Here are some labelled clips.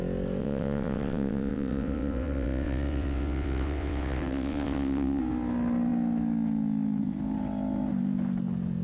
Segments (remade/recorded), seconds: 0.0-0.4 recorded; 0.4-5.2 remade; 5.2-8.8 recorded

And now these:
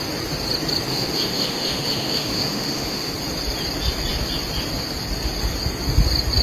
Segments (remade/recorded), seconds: 0.0-0.9 recorded; 0.9-3.1 remade; 3.1-6.4 recorded